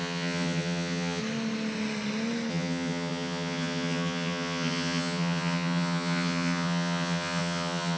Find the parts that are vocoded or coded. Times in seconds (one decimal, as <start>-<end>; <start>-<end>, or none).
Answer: 0.0-1.2; 2.5-8.0